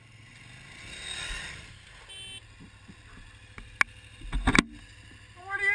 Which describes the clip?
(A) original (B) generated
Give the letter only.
A